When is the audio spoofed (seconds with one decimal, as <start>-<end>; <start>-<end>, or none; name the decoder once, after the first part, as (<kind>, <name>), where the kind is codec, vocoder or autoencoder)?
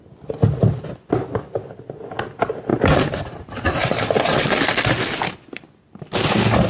2.7-3.4 (vocoder, BigVGAN v2); 3.8-4.6